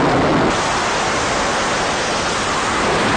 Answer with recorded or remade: recorded